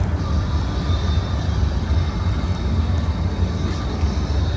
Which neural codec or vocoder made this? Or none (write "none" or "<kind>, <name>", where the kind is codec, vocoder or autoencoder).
none